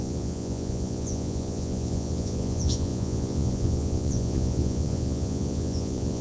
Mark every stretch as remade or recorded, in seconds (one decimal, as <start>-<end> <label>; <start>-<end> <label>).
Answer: 0.0-6.2 remade